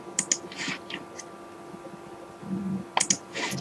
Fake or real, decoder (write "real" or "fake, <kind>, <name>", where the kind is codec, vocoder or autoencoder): real